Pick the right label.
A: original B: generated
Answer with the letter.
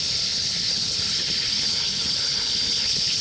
B